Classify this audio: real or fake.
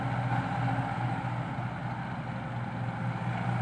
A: real